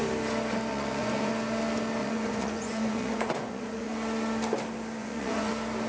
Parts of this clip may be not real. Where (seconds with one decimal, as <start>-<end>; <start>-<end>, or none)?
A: 0.7-1.3; 2.0-3.9; 5.0-5.5